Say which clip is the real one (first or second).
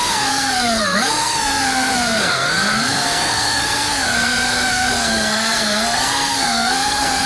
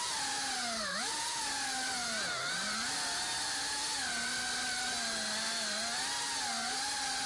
second